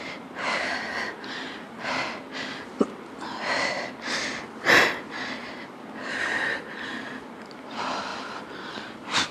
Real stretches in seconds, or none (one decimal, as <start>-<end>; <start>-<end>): 0.0-9.3